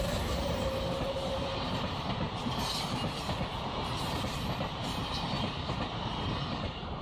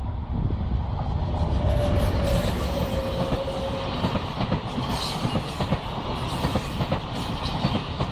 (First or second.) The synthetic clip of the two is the first